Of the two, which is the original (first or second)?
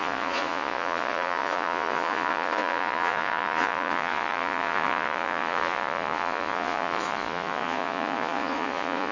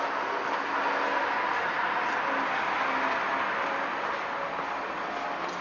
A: second